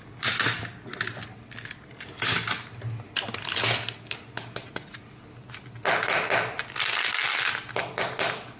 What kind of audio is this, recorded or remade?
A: recorded